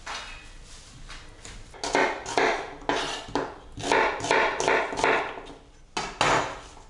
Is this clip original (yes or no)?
yes